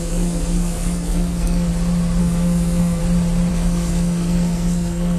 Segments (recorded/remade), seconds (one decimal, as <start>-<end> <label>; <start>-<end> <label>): 0.0-1.7 remade; 1.7-2.2 recorded; 2.2-3.0 remade; 3.0-3.5 recorded; 3.5-5.2 remade